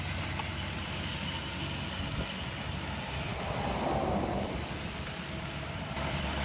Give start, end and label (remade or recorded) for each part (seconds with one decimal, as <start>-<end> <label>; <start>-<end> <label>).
0.0-1.1 remade; 1.1-2.7 recorded; 2.7-6.4 remade